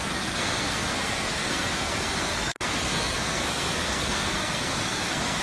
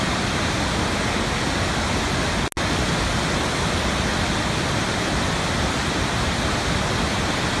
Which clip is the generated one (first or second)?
first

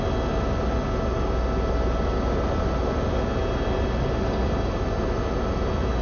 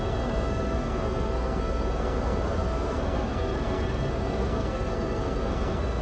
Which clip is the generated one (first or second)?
second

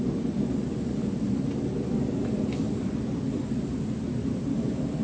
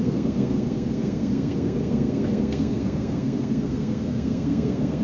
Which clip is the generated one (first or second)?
second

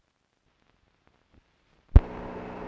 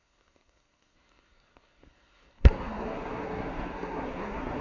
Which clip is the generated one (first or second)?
second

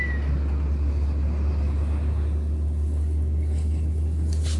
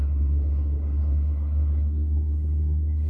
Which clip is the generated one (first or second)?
second